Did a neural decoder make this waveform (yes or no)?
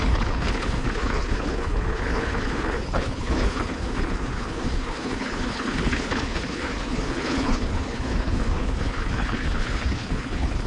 yes